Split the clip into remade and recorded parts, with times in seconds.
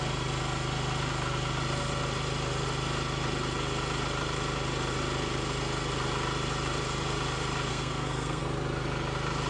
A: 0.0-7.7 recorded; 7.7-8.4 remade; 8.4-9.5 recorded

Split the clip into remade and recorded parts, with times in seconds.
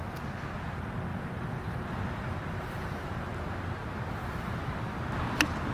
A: 0.0-1.1 recorded; 1.1-3.4 remade; 3.4-5.7 recorded